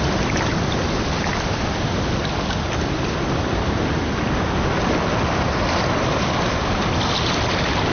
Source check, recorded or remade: recorded